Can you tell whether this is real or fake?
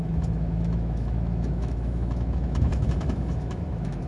fake